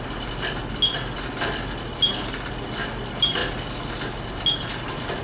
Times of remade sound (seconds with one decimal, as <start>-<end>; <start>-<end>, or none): none